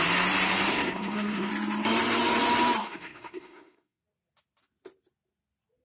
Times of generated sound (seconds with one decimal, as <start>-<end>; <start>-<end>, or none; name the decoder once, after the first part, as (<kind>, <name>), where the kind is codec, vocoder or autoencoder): 0.7-1.5 (codec, SNAC); 2.8-4.0